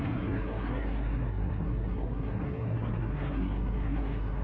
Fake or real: fake